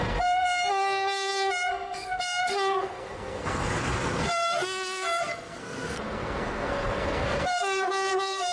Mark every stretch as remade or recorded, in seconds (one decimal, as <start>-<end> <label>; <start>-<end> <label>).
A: 0.0-8.5 remade